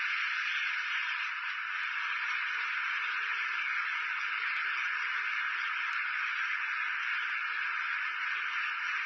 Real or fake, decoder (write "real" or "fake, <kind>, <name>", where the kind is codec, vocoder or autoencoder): real